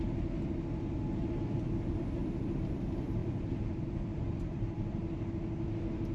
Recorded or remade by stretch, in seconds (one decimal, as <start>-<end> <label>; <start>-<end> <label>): 0.0-2.2 recorded; 2.2-2.8 remade; 2.8-3.2 recorded; 3.2-5.3 remade; 5.3-6.1 recorded

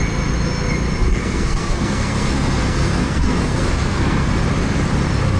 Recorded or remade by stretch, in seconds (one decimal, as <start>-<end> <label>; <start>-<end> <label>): 0.0-1.1 recorded; 1.1-4.3 remade; 4.3-5.4 recorded

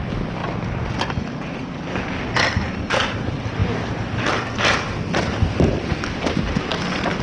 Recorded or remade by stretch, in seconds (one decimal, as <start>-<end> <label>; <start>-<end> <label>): 0.0-0.4 remade; 0.4-2.7 recorded; 2.7-6.7 remade; 6.7-7.2 recorded

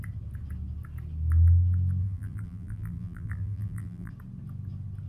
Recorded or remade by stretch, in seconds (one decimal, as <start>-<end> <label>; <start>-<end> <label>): 0.0-2.0 recorded; 2.0-4.1 remade; 4.1-5.1 recorded

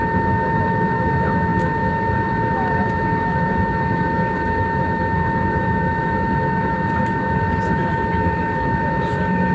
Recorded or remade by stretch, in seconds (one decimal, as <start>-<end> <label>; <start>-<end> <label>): 0.0-9.5 remade

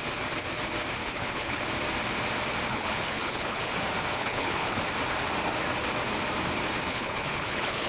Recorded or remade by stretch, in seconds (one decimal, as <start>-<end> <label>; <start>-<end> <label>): 0.0-1.0 recorded; 1.0-1.6 remade; 1.6-2.7 recorded; 2.7-3.7 remade; 3.7-4.2 recorded; 4.2-4.8 remade; 4.8-6.9 recorded; 6.9-7.9 remade